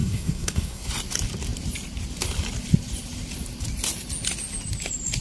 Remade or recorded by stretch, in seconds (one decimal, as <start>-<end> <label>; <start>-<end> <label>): 0.0-0.9 remade; 0.9-5.2 recorded